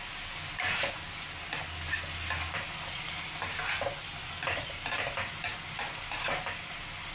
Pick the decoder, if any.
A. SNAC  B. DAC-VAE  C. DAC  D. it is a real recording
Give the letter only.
D